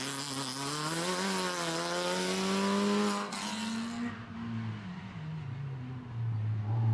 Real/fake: real